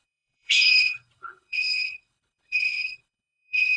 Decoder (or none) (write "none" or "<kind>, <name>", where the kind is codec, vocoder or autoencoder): codec, HILCodec